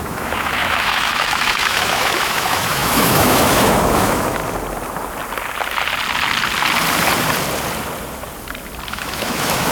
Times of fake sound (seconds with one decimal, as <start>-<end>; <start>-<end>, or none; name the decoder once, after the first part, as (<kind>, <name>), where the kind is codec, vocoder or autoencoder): 0.0-4.4 (autoencoder, DAC-VAE); 8.9-9.7